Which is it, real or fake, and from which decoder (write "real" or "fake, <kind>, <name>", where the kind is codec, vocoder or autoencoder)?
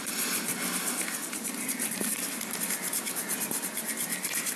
real